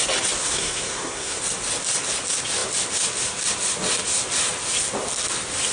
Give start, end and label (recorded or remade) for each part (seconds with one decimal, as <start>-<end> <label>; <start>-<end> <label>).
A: 0.0-0.4 recorded; 0.4-1.4 remade; 1.4-5.7 recorded